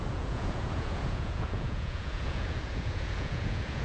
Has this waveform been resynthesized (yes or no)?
yes